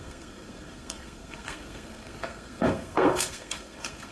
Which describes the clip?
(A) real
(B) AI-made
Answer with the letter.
B